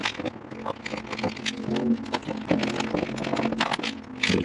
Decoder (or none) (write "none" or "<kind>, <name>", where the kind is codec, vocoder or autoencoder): none